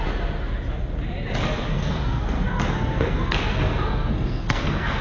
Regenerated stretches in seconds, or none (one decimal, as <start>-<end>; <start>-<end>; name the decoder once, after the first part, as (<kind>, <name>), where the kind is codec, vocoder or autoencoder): 1.7-5.0 (codec, SNAC)